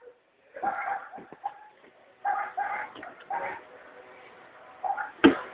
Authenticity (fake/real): real